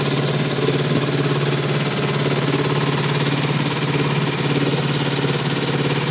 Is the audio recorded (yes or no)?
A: yes